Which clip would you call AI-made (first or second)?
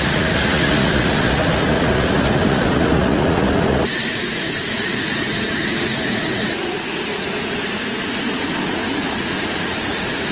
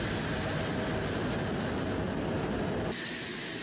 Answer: first